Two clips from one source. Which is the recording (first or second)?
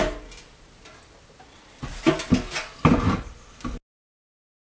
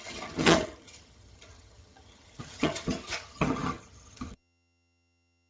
first